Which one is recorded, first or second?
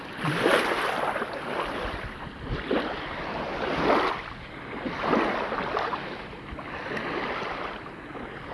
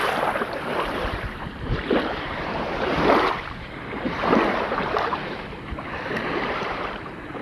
first